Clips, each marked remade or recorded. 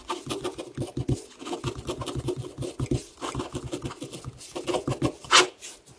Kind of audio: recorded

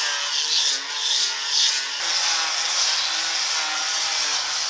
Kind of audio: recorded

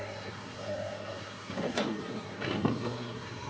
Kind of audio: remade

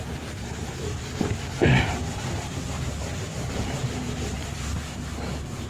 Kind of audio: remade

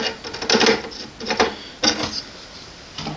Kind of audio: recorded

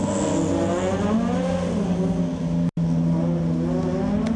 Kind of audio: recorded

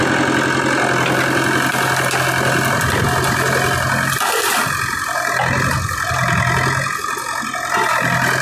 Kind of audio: recorded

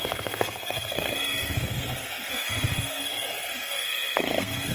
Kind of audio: remade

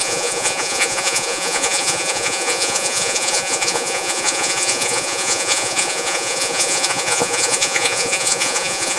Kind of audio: remade